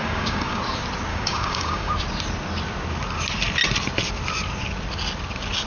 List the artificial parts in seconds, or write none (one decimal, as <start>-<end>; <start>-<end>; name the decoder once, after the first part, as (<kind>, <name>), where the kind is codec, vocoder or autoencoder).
0.0-0.6 (codec, DAC); 1.1-1.9